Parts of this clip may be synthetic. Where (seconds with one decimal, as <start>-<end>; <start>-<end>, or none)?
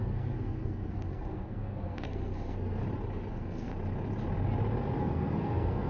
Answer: 0.0-2.8; 3.3-3.7; 5.0-5.9